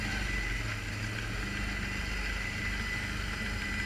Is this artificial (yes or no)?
no